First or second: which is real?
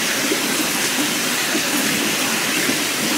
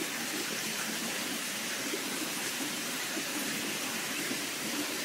first